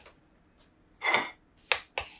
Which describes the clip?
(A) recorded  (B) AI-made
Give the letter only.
A